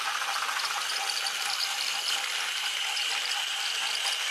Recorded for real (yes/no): yes